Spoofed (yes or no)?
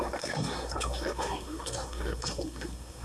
yes